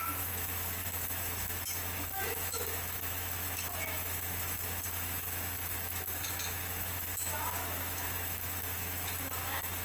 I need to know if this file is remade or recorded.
remade